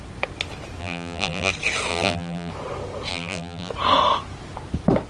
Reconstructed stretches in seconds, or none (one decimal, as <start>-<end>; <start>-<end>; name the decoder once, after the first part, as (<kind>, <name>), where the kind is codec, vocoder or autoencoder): 0.8-1.5 (vocoder, BigVGAN v2); 1.9-2.5; 3.1-3.7